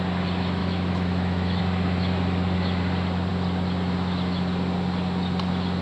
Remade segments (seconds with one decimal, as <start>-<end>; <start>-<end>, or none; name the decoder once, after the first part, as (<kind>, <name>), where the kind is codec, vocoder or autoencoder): 0.6-1.6 (autoencoder, DAC-VAE)